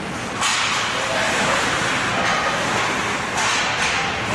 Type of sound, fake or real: real